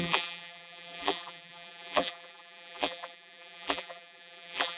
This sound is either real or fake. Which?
fake